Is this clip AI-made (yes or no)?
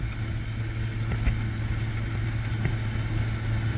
no